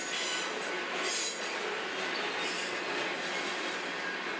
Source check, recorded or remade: recorded